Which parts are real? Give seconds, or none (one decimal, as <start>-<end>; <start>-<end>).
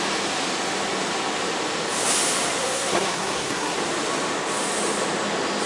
0.0-2.6; 3.8-5.7